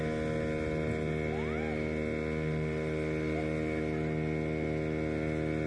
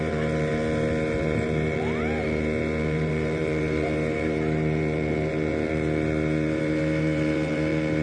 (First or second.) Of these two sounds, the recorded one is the first